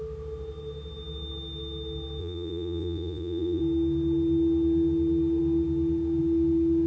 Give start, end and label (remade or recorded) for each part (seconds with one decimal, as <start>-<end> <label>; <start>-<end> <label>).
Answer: 0.0-2.2 recorded; 2.2-3.6 remade; 3.6-6.9 recorded